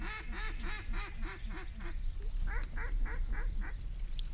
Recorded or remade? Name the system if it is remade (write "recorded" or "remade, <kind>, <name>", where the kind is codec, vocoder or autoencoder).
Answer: recorded